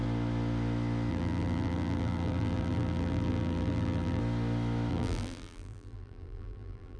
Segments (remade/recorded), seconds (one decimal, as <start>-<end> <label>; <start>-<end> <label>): 0.0-1.1 recorded; 1.1-4.2 remade; 4.2-4.9 recorded; 4.9-7.0 remade